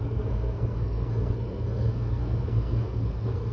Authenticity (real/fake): fake